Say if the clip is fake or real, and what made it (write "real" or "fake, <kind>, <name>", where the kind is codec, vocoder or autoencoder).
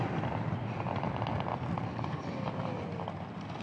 real